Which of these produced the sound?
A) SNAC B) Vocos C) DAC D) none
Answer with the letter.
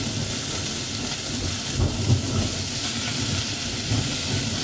D